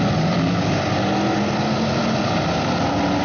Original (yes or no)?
yes